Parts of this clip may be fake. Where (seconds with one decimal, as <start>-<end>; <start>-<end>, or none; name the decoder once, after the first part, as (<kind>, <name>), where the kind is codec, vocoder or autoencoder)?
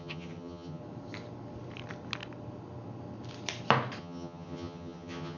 0.0-0.8 (vocoder, HiFi-GAN); 4.0-5.4